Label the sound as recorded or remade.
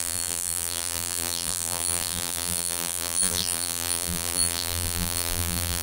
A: remade